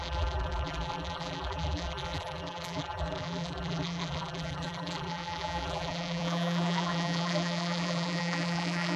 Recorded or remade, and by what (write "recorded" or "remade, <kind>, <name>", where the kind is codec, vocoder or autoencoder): remade, vocoder, BigVGAN v2